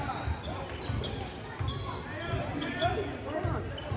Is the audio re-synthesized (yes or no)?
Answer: no